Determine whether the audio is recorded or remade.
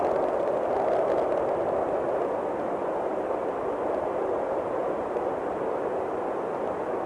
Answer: recorded